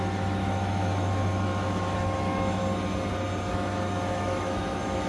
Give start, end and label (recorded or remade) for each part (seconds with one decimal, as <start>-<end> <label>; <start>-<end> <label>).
0.0-2.6 remade; 2.6-3.5 recorded; 3.5-5.1 remade